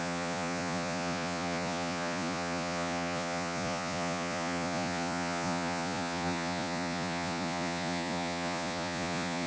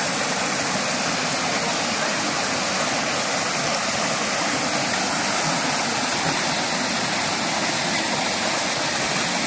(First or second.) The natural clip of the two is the second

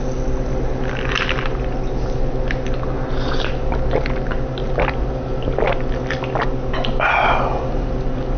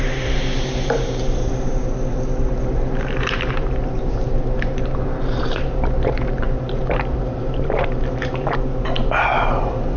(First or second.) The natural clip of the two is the first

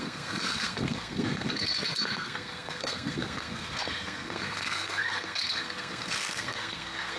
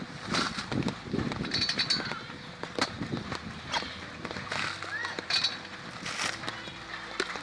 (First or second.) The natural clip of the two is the second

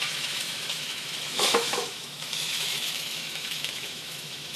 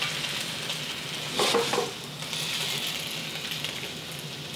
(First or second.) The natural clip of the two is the second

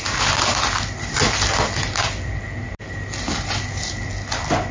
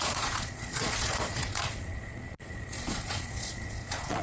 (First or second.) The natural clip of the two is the first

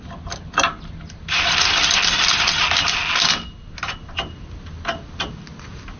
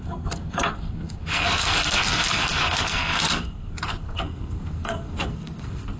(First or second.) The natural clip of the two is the first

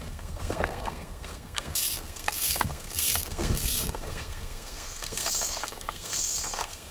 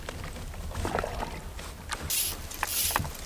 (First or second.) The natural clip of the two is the second